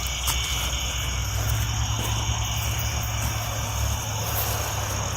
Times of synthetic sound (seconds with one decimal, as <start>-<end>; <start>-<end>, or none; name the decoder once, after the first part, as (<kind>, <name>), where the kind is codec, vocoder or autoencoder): none